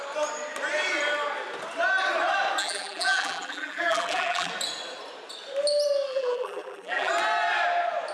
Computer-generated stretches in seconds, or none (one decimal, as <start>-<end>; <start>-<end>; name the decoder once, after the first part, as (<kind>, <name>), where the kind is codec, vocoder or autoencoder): 2.6-4.5 (vocoder, BigVGAN v2); 6.1-7.1